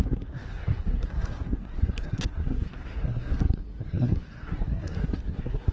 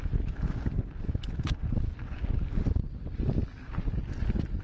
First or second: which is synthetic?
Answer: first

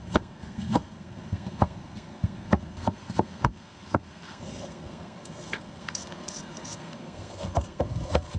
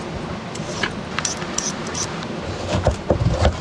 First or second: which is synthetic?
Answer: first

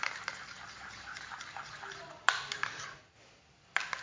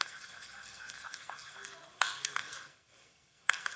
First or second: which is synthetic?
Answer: second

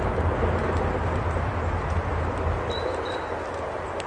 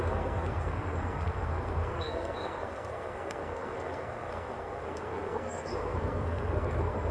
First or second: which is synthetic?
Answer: second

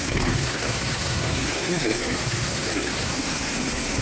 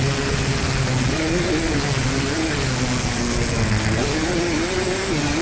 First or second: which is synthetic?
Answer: first